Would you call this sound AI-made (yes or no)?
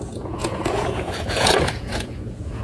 yes